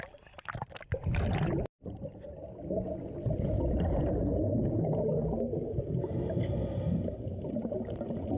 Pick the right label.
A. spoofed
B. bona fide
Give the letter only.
B